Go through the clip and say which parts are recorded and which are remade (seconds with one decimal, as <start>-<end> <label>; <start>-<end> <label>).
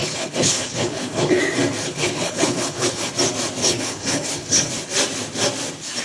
0.0-1.4 remade; 1.4-1.8 recorded; 1.8-3.1 remade; 3.1-3.6 recorded; 3.6-4.7 remade; 4.7-6.0 recorded